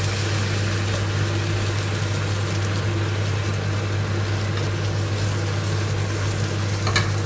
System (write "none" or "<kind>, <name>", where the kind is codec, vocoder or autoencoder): none